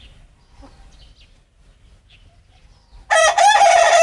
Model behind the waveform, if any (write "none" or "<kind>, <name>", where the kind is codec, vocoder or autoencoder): none